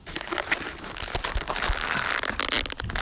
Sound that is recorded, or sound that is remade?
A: recorded